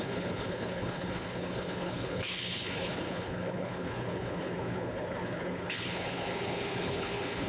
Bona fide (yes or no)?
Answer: no